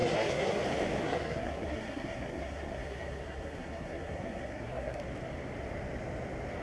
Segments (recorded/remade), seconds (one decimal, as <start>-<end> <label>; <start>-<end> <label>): 0.0-0.6 remade; 0.6-1.0 recorded; 1.0-5.0 remade; 5.0-6.6 recorded